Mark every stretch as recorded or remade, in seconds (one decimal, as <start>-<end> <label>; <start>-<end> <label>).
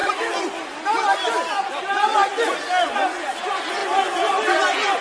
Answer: 0.0-1.7 recorded; 1.7-2.3 remade; 2.3-3.4 recorded; 3.4-3.8 remade; 3.8-4.5 recorded; 4.5-5.0 remade